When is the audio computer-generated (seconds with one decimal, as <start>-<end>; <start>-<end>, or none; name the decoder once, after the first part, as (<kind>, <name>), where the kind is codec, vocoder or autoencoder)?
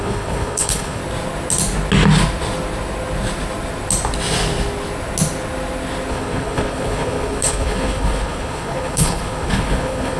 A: 0.0-1.0 (codec, HILCodec); 6.1-10.2